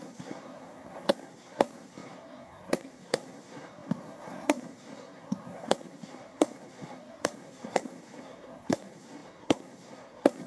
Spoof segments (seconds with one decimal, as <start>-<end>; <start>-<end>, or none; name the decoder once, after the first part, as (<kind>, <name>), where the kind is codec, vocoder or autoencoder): 0.0-10.5 (codec, SNAC)

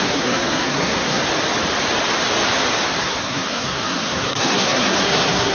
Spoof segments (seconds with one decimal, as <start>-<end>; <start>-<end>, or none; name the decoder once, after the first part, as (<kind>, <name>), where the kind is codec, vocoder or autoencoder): 0.0-1.2 (codec, SNAC); 3.0-5.5

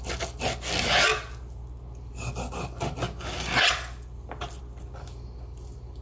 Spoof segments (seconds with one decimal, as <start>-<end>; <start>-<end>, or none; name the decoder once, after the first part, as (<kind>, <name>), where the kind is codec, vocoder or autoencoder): none